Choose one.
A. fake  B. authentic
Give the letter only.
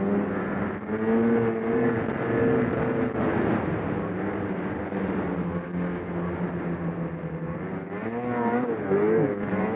B